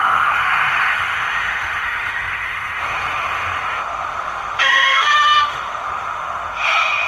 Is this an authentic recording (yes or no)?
no